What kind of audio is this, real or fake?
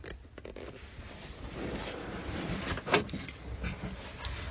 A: real